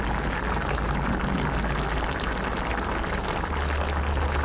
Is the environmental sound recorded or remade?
recorded